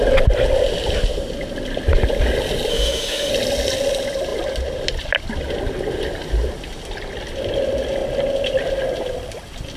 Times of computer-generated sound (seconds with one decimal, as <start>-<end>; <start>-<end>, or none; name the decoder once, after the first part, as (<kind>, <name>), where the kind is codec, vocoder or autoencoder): 2.7-3.3 (autoencoder, DAC-VAE)